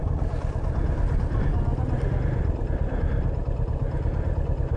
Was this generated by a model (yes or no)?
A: no